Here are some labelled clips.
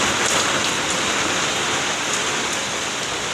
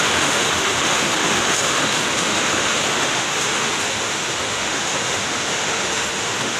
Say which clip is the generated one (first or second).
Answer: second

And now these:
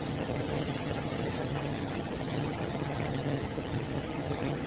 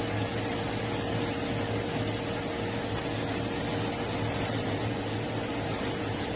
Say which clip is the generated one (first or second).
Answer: first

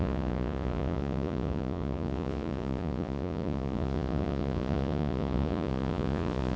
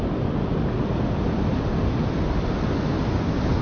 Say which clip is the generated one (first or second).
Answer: first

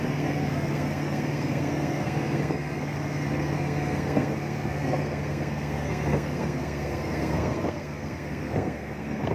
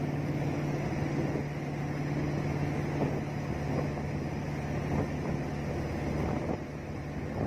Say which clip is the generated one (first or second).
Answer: first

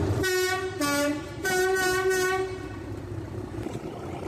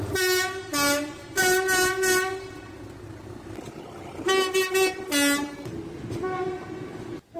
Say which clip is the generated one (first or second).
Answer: first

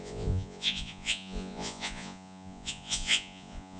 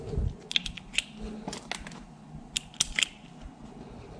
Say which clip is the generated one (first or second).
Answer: first